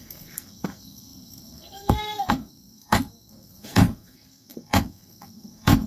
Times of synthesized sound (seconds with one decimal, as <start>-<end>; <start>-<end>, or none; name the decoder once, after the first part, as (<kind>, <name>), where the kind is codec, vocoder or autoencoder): 0.0-5.9 (codec, SNAC)